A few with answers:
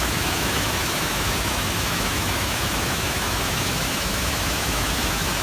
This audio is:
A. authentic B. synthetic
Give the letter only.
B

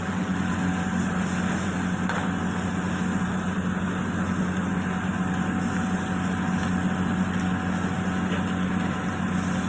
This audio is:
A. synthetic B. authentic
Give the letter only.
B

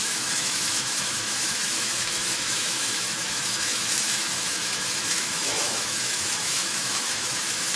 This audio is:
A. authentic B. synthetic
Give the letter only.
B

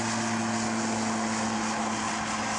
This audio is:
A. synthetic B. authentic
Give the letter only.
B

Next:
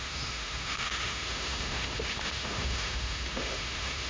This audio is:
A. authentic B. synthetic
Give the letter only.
B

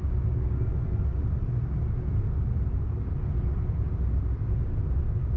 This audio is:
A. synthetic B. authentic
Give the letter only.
B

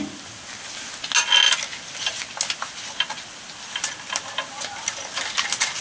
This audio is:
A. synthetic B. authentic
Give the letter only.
B